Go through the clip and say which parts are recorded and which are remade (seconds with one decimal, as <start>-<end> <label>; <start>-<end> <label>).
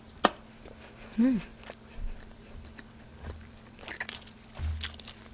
0.0-1.5 recorded; 1.5-4.7 remade; 4.7-5.3 recorded